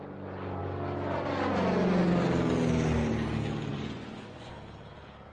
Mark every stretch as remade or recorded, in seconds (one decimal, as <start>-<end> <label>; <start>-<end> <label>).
0.0-3.7 recorded; 3.7-4.5 remade; 4.5-5.3 recorded